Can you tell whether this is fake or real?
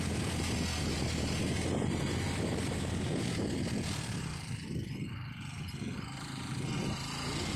real